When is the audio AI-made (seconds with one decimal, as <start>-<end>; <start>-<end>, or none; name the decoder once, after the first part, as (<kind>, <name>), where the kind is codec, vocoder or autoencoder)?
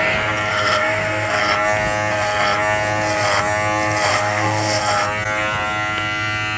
0.5-1.4 (codec, SNAC); 4.1-4.8